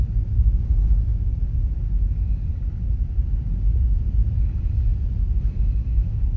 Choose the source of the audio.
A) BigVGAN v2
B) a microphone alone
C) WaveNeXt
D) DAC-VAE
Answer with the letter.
A